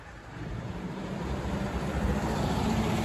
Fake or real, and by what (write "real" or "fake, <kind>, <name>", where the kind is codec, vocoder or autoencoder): fake, vocoder, BigVGAN v2